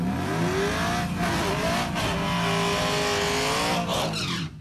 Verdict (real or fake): real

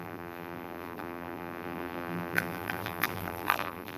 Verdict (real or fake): fake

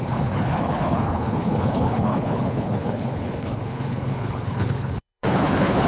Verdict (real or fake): fake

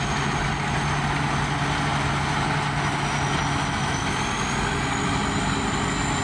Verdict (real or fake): real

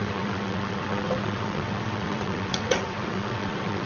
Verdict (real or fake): fake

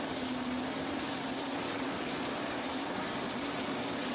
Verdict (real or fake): real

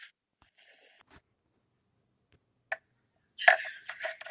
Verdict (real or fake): real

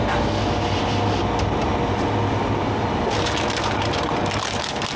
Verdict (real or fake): real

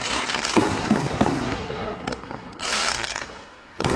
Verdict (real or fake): fake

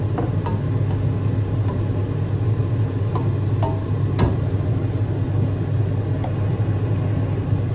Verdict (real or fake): real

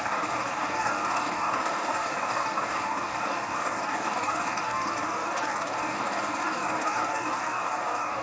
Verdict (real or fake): fake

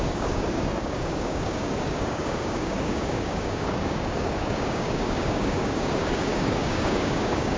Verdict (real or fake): fake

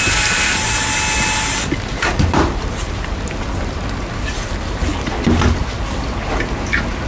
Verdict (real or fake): real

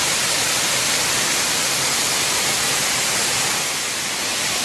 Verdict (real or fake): real